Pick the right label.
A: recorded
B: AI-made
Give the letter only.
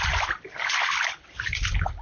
B